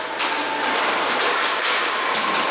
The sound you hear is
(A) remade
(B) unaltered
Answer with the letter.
B